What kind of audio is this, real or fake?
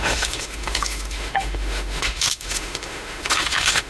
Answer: fake